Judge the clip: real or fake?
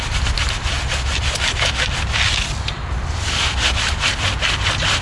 real